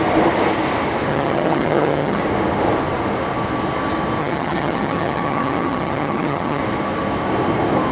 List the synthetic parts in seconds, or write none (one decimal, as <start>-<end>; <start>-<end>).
1.1-2.2; 4.2-6.6